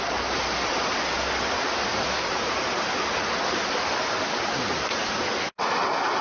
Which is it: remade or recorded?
recorded